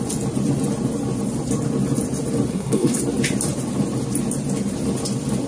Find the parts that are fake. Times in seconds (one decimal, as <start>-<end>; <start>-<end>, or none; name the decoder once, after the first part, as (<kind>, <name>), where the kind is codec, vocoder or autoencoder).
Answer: 2.5-3.0 (codec, SNAC)